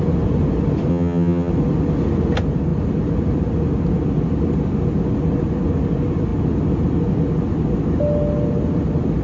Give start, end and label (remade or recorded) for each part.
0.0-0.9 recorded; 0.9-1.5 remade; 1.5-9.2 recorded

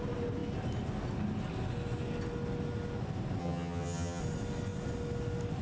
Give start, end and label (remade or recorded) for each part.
0.0-3.4 recorded; 3.4-4.2 remade; 4.2-5.6 recorded

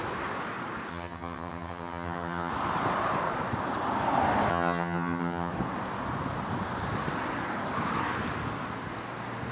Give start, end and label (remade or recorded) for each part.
0.0-0.9 recorded; 0.9-2.5 remade; 2.5-4.5 recorded; 4.5-5.5 remade; 5.5-9.5 recorded

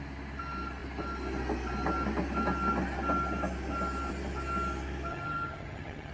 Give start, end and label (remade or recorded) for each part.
0.0-5.1 recorded; 5.1-6.1 remade

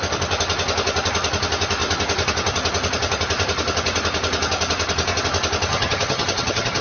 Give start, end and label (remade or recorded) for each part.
0.0-5.7 recorded; 5.7-6.8 remade

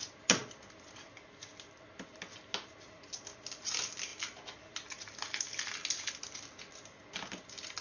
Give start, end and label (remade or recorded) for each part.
0.0-7.8 recorded

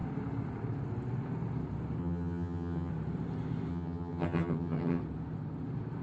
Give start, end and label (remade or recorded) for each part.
0.0-2.0 recorded; 2.0-2.9 remade; 2.9-3.7 recorded; 3.7-5.0 remade; 5.0-6.0 recorded

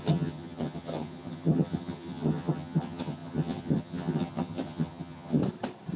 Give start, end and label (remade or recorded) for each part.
0.0-5.4 remade; 5.4-6.0 recorded